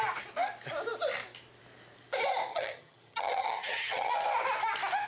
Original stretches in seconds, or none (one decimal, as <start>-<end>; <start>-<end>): 0.0-2.5; 4.1-5.1